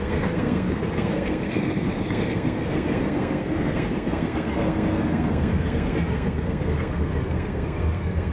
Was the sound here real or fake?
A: fake